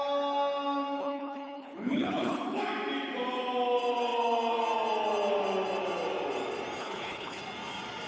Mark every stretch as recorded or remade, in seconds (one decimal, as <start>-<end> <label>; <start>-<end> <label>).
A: 0.0-1.0 recorded; 1.0-2.6 remade; 2.6-6.8 recorded; 6.8-7.4 remade; 7.4-8.1 recorded